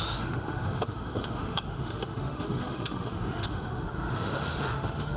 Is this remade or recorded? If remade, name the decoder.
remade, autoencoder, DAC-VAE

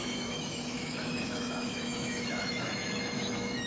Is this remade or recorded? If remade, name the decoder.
remade, autoencoder, DAC-VAE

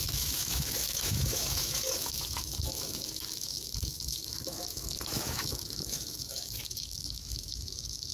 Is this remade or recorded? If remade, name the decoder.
remade, autoencoder, DAC-VAE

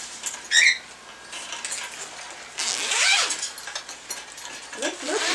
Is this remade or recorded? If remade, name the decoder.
recorded